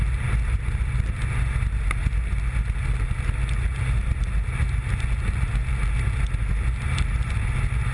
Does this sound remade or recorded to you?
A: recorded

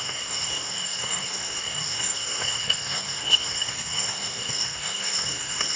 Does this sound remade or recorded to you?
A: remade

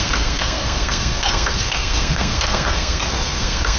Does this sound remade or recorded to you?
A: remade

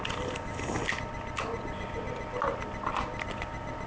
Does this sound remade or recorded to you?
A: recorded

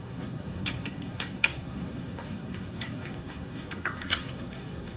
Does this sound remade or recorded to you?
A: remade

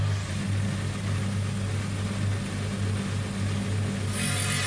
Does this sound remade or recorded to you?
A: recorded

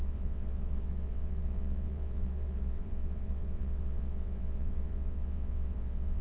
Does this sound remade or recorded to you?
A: remade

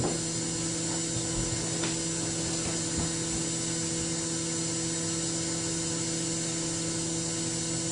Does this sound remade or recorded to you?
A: recorded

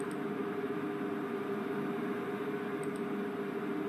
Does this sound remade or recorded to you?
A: recorded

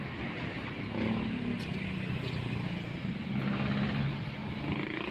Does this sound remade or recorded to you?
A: recorded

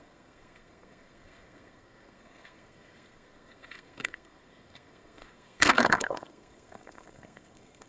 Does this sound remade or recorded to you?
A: remade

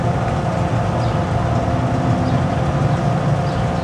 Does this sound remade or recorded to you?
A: recorded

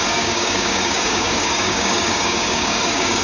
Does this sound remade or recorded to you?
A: remade